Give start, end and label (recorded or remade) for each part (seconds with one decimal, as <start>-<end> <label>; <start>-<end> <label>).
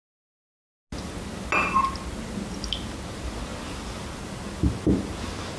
0.0-5.6 recorded